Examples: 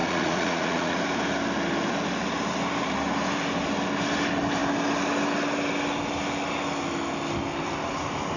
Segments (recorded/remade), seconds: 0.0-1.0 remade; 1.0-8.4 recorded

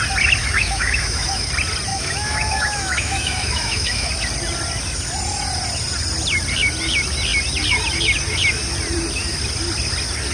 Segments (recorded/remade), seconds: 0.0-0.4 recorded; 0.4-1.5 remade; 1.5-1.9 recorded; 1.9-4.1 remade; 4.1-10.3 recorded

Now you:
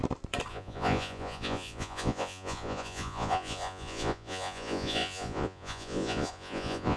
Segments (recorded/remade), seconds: 0.0-0.5 recorded; 0.5-7.0 remade

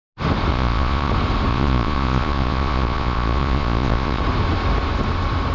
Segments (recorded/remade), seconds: 0.0-0.5 recorded; 0.5-1.1 remade; 1.1-1.5 recorded; 1.5-4.2 remade; 4.2-5.5 recorded